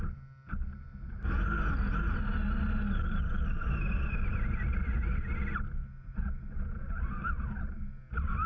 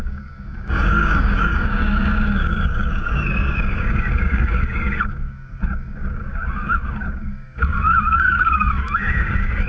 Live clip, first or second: first